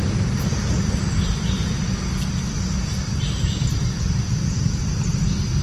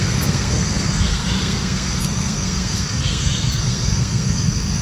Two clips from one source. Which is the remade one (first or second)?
second